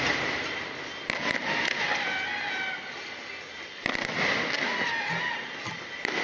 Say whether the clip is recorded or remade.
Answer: recorded